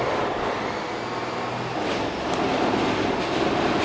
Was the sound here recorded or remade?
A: recorded